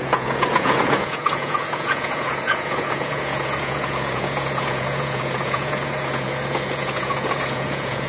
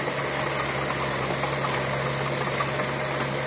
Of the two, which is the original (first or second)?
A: second